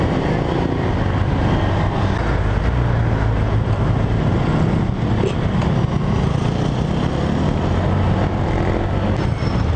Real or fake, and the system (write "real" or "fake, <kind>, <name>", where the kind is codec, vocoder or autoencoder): real